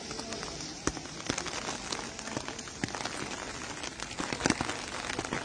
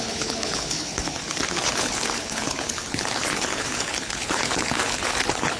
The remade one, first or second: second